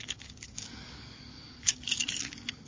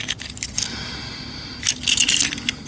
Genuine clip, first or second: second